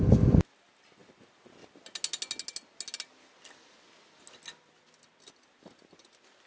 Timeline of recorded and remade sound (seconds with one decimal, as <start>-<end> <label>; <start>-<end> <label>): 0.0-6.5 recorded